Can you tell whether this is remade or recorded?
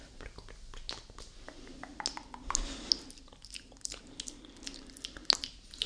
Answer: recorded